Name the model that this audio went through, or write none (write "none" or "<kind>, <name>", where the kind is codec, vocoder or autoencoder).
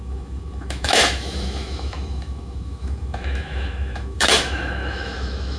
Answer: autoencoder, DAC-VAE